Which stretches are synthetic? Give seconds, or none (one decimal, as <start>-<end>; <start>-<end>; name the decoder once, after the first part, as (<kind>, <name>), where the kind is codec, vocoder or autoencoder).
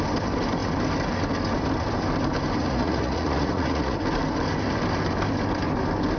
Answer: 2.6-4.0 (vocoder, Vocos)